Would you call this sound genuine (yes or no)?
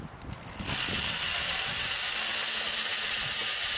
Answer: yes